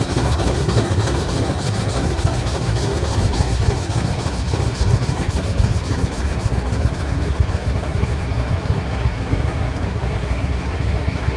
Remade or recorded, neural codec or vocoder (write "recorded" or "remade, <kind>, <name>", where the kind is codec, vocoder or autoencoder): remade, codec, SNAC